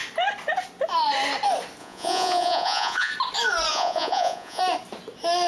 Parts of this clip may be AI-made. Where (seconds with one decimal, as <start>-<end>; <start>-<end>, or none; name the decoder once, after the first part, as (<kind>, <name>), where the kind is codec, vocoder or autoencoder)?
1.8-3.1 (vocoder, Vocos); 3.7-4.6